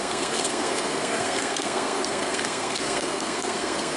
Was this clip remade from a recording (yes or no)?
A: yes